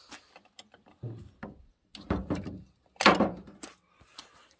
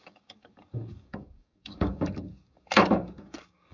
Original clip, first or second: first